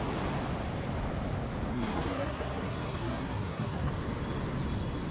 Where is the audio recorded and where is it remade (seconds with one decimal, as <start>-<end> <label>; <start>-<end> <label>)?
0.0-1.7 recorded; 1.7-3.9 remade; 3.9-5.1 recorded